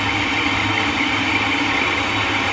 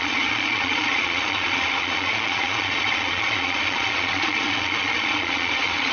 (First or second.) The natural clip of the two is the first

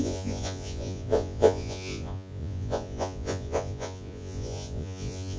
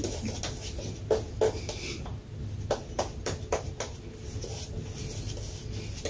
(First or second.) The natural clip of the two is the second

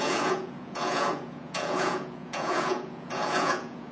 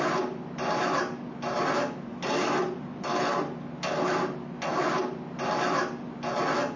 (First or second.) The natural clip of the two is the second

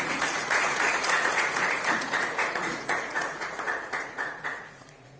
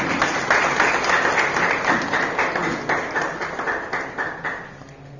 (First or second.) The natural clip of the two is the second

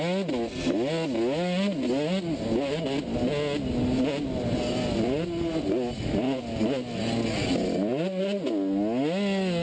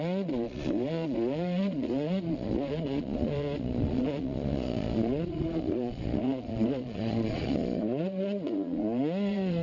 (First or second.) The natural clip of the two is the first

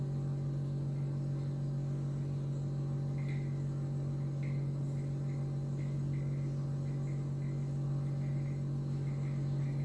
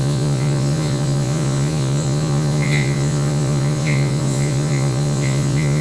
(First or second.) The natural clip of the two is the first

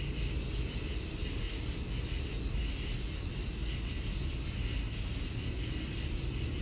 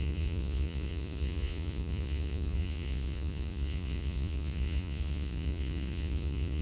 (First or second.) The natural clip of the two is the first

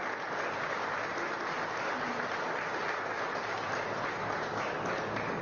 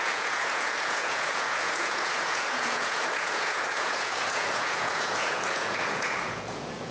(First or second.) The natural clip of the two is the first